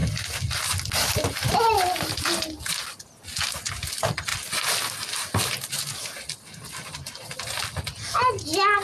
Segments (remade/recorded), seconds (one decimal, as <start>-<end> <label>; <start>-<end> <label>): 0.0-8.8 recorded